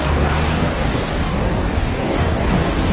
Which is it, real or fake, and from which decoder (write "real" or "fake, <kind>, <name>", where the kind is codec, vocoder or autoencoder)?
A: fake, codec, DAC